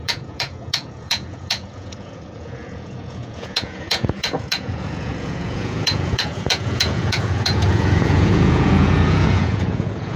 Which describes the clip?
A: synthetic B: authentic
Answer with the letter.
A